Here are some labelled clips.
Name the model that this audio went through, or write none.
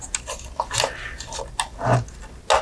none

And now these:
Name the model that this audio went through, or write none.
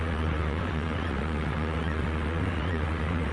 vocoder, WaveNeXt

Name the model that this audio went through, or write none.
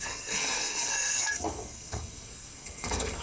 codec, SNAC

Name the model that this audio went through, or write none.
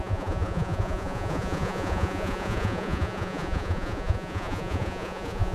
vocoder, Vocos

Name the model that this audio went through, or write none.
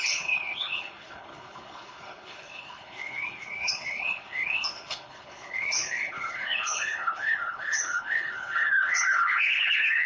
codec, HILCodec